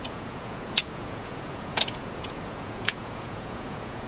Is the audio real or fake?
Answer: fake